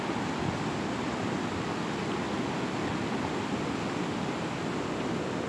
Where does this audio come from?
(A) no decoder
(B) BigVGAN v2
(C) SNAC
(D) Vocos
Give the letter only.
A